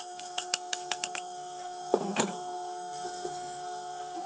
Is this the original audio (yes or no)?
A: no